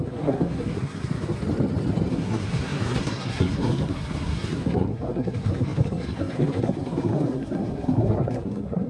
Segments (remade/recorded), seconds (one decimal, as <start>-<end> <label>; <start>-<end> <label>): 0.0-1.4 remade; 1.4-2.1 recorded; 2.1-8.9 remade

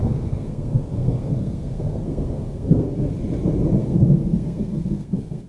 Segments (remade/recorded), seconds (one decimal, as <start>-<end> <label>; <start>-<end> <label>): 0.0-3.1 remade; 3.1-3.8 recorded; 3.8-5.5 remade

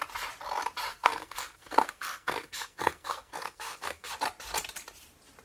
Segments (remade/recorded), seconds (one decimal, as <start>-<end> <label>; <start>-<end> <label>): 0.0-0.9 recorded; 0.9-4.1 remade; 4.1-5.4 recorded

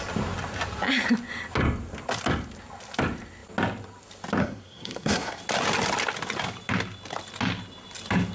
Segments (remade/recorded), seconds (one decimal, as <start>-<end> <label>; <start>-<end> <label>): 0.0-4.4 recorded; 4.4-5.4 remade; 5.4-8.3 recorded

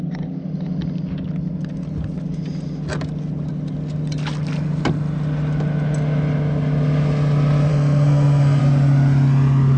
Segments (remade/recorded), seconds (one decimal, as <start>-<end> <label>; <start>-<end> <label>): 0.0-7.7 recorded; 7.7-8.6 remade; 8.6-9.8 recorded

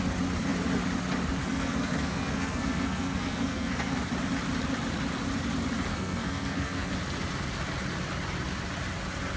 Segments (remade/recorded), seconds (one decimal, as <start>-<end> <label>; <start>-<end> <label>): 0.0-1.4 recorded; 1.4-4.0 remade; 4.0-5.9 recorded; 5.9-6.9 remade; 6.9-9.4 recorded

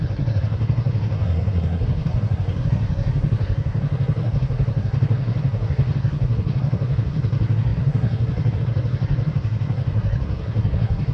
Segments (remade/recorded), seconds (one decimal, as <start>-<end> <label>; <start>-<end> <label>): 0.0-11.1 remade